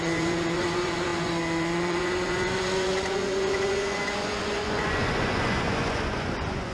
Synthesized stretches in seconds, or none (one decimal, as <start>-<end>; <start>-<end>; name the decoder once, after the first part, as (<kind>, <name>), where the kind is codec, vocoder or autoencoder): 0.0-6.7 (vocoder, Vocos)